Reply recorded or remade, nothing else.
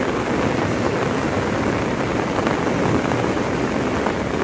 recorded